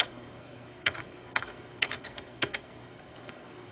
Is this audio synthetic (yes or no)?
yes